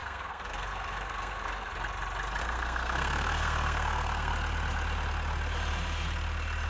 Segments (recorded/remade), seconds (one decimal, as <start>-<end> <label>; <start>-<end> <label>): 0.0-1.7 remade; 1.7-2.4 recorded; 2.4-4.3 remade; 4.3-6.7 recorded